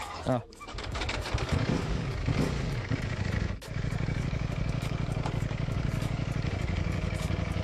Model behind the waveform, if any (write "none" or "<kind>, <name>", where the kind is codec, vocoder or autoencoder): codec, DAC